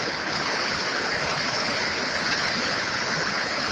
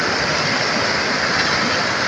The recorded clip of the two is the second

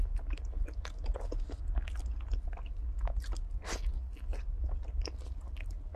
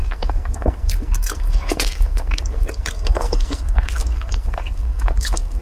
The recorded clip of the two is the first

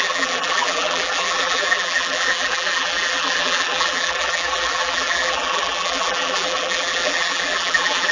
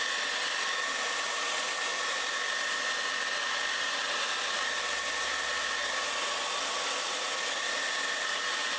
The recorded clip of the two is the second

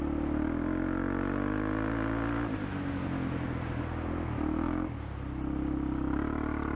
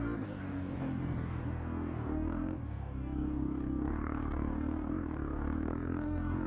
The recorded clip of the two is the first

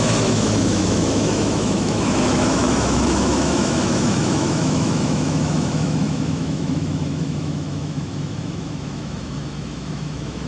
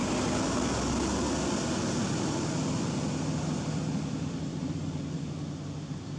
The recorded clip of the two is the second